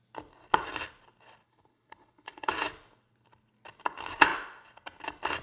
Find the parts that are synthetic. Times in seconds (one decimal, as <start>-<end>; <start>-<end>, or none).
1.4-2.5

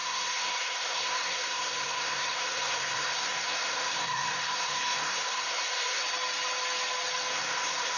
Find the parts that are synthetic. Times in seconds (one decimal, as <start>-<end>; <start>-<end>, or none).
0.0-6.0; 7.3-8.0

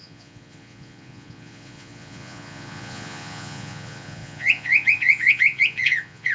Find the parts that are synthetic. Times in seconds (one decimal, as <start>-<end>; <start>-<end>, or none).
0.0-6.3

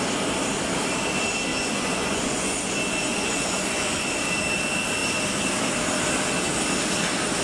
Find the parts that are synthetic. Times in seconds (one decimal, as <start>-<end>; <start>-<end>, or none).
1.5-2.6; 3.1-4.0

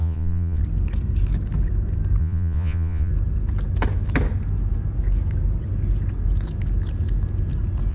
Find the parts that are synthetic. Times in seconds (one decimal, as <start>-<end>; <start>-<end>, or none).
0.0-0.6; 2.2-3.1

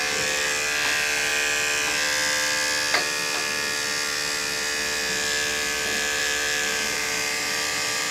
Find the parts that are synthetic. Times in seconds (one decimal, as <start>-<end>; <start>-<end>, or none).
6.7-8.1

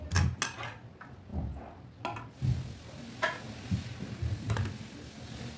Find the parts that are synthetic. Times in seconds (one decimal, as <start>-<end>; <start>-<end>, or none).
none

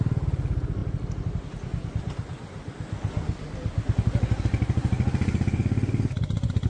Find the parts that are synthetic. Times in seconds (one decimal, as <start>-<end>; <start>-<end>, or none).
none